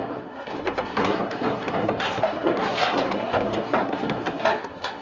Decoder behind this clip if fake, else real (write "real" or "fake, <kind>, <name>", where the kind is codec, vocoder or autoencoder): fake, codec, SNAC